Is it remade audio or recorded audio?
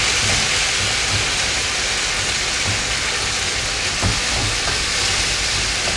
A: recorded